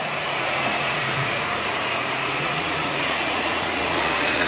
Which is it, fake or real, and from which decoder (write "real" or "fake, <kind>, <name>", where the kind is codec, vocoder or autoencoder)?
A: fake, vocoder, Vocos